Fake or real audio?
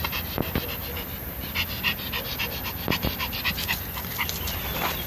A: real